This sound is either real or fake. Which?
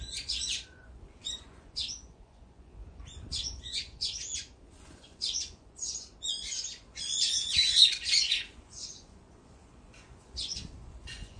fake